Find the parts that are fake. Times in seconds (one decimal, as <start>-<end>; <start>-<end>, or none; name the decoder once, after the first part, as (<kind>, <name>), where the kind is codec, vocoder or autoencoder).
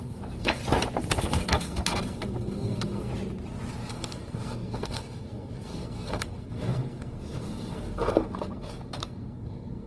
0.0-0.6 (codec, SNAC); 1.1-3.1; 3.9-9.9